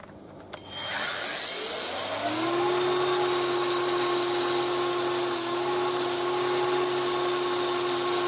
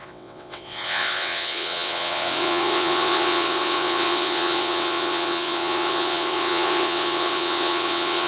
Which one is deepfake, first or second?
second